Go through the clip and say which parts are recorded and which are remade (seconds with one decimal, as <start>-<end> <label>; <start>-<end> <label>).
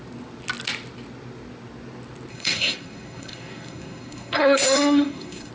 0.0-2.3 recorded; 2.3-5.5 remade